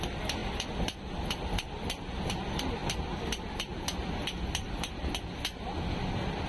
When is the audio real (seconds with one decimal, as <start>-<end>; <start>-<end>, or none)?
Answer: 0.0-0.4; 2.3-6.5